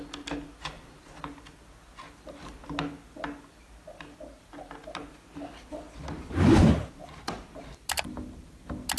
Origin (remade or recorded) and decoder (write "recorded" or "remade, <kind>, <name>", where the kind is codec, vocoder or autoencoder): recorded